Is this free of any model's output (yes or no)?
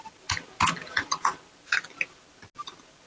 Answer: yes